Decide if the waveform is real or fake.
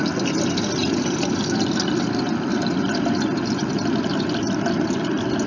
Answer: real